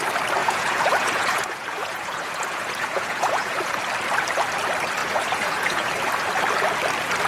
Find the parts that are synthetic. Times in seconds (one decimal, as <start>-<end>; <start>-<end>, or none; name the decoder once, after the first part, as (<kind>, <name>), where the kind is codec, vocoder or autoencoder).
0.4-3.8 (vocoder, Vocos); 5.0-5.9

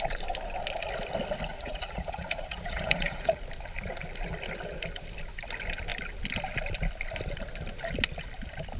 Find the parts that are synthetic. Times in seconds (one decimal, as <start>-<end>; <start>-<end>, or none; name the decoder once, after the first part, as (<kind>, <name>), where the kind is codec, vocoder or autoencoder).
1.5-3.4 (vocoder, Vocos)

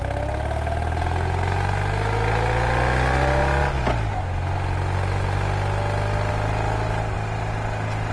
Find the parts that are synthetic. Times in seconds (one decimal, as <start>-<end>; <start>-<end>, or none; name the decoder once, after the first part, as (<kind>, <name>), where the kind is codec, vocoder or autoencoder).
none

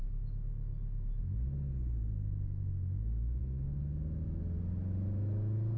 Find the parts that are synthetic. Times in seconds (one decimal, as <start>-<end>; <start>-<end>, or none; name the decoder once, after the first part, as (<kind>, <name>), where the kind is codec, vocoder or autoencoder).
none

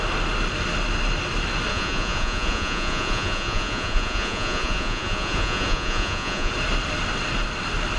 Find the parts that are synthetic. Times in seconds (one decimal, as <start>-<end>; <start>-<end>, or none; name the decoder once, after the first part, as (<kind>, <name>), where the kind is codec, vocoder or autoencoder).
1.7-6.5 (vocoder, Vocos)